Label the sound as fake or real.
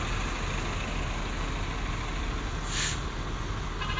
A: real